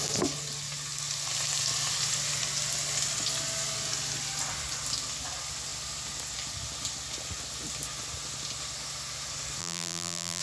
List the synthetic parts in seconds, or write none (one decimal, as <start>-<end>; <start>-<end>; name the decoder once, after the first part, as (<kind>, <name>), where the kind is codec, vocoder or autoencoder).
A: 9.6-10.4 (vocoder, BigVGAN v2)

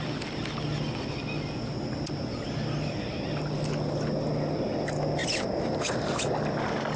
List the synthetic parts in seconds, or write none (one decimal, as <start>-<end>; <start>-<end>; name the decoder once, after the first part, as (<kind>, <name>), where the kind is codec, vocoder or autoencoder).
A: none

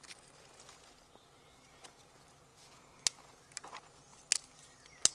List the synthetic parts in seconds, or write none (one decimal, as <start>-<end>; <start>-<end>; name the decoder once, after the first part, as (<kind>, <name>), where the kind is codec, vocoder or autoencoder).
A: none

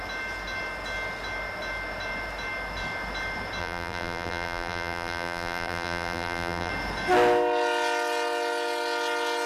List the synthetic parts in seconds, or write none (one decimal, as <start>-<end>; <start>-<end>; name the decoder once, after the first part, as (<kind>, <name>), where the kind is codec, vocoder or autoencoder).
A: 3.6-6.7 (vocoder, BigVGAN v2)

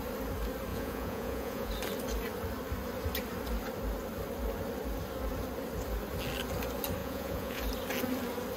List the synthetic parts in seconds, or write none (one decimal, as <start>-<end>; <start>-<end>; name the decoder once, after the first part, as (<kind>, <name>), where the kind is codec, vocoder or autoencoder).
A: 0.7-1.7 (vocoder, Vocos); 7.0-7.6